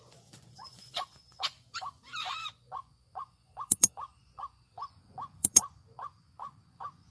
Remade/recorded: remade